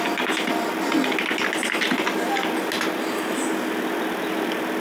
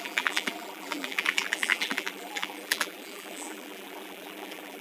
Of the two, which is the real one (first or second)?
first